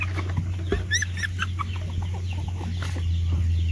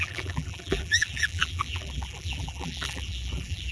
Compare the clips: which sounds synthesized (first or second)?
second